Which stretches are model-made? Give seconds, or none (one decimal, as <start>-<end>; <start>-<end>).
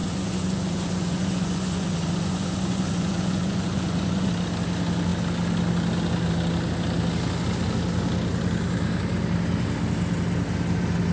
0.0-4.3